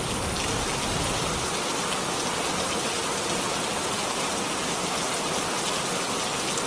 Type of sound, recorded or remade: recorded